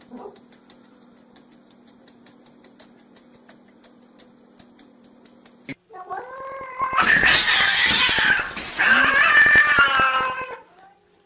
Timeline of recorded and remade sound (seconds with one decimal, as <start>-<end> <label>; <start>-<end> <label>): 0.0-11.3 recorded